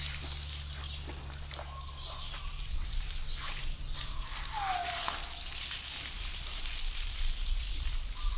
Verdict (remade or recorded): recorded